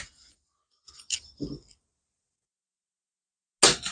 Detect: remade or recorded recorded